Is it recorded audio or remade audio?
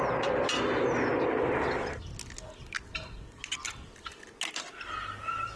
recorded